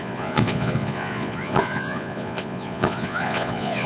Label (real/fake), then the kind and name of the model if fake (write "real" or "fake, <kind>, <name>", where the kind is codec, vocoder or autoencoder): fake, vocoder, Vocos